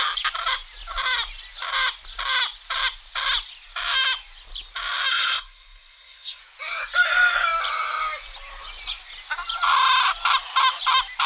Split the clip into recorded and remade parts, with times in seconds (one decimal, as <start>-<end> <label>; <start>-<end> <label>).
0.0-5.1 recorded; 5.1-6.4 remade; 6.4-11.3 recorded